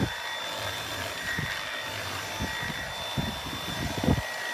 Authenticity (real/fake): real